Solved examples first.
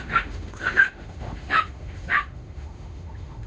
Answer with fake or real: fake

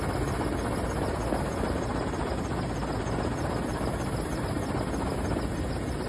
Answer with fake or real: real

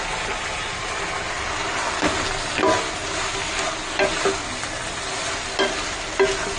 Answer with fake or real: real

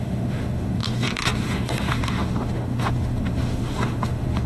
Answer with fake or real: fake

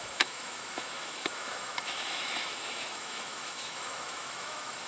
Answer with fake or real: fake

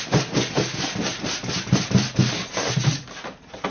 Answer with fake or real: real